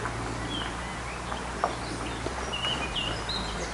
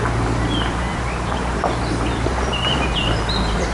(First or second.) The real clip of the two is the first